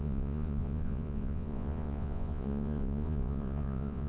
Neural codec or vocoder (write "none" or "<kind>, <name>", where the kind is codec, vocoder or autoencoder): vocoder, Vocos